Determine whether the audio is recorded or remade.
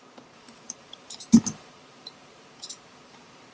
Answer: remade